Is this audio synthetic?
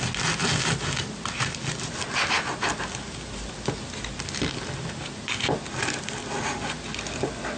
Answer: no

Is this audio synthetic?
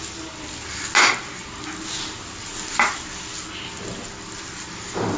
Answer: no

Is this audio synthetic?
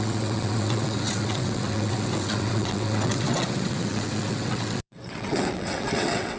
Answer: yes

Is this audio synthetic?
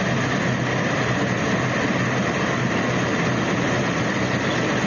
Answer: no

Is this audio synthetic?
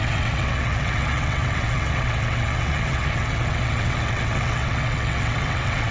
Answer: yes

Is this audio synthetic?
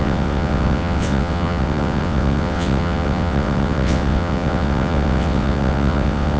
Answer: yes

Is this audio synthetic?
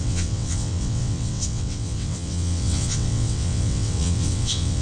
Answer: yes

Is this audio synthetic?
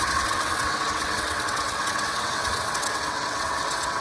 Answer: yes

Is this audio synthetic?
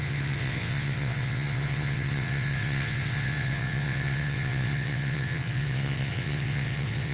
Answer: yes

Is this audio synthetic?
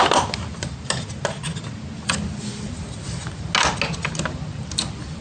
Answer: no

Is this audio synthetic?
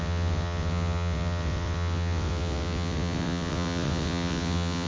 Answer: yes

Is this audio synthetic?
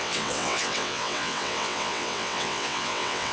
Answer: yes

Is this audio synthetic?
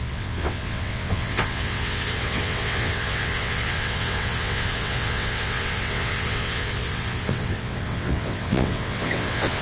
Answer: yes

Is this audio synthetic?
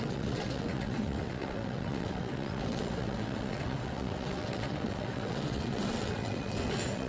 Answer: yes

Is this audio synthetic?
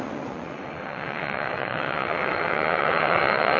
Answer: yes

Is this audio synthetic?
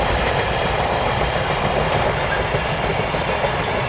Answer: no